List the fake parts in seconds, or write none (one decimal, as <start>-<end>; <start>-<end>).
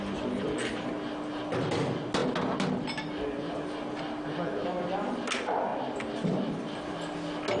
none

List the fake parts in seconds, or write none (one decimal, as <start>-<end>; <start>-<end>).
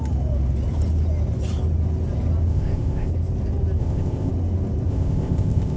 2.5-3.1; 3.8-4.3; 4.9-5.8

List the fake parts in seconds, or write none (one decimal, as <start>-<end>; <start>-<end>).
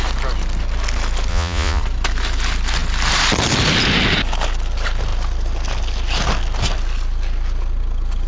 1.3-1.8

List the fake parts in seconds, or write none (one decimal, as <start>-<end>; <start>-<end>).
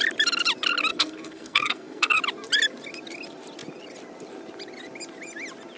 0.9-2.2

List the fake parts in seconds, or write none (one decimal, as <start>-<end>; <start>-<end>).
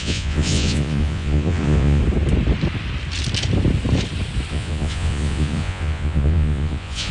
0.0-2.0; 4.5-7.1